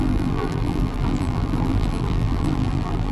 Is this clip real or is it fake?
fake